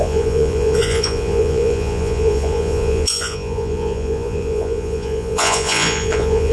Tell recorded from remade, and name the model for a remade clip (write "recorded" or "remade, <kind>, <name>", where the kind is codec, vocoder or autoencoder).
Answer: remade, vocoder, Vocos